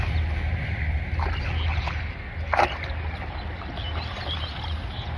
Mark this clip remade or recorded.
recorded